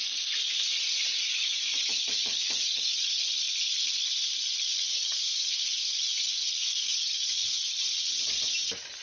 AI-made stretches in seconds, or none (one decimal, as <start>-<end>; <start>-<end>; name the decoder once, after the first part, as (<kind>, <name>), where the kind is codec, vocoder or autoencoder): 1.2-3.2 (codec, DAC); 4.9-7.3